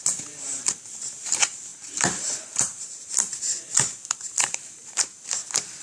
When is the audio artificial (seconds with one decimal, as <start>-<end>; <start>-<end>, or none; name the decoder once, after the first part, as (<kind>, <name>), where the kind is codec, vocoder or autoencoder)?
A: 1.7-5.2 (vocoder, BigVGAN v2)